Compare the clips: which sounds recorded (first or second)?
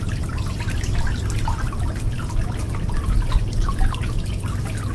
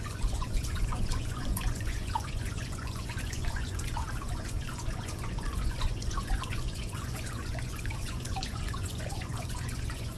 first